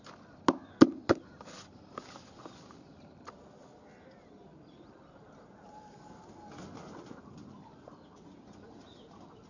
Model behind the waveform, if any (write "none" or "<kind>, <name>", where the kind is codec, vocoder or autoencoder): none